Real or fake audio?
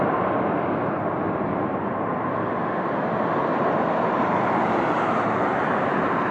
real